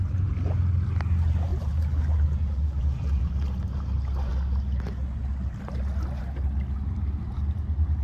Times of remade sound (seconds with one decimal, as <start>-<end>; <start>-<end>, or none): 1.5-3.3